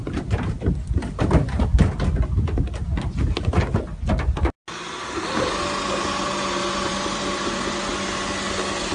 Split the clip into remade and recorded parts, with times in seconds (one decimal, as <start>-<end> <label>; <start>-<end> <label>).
0.0-1.7 remade; 1.7-6.2 recorded; 6.2-7.9 remade; 7.9-8.9 recorded